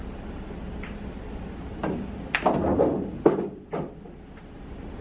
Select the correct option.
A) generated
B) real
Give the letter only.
B